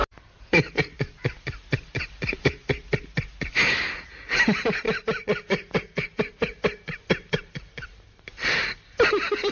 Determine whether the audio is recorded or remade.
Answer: recorded